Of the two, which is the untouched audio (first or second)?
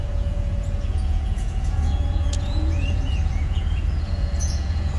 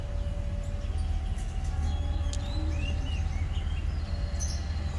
second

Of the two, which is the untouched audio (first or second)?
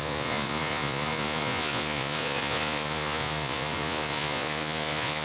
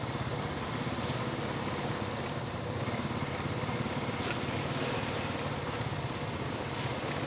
second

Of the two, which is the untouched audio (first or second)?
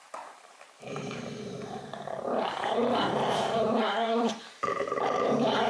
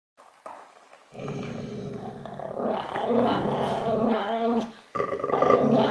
second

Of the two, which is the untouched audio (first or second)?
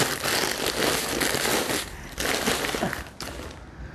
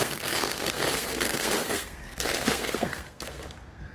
first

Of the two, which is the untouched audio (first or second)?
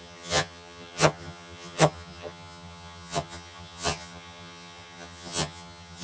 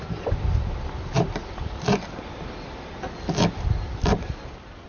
second